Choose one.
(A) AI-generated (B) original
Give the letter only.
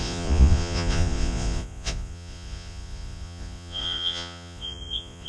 A